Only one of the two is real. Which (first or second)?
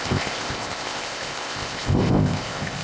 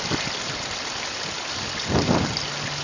second